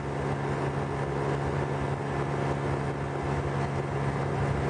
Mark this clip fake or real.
real